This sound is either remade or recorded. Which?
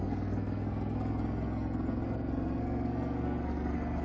remade